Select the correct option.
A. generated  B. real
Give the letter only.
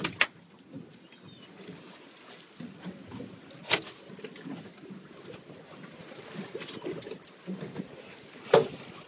B